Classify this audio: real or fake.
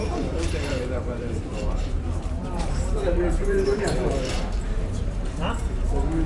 fake